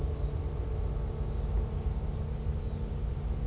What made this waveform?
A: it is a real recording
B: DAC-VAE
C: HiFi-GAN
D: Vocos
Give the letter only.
A